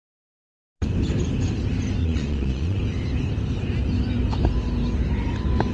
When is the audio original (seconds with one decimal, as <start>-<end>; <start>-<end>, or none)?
0.0-2.0; 2.8-5.7